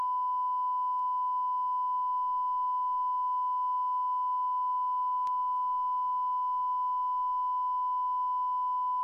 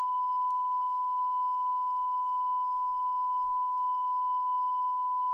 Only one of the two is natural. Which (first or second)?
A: first